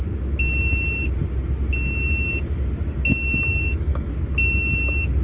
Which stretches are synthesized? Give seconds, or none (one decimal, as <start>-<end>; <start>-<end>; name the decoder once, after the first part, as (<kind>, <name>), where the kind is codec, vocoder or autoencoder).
3.5-4.1 (codec, DAC)